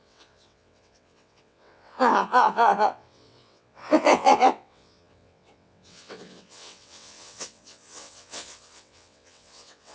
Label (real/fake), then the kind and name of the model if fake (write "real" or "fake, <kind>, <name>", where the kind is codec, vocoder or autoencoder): fake, vocoder, WaveNeXt